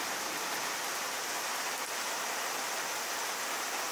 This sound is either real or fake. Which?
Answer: real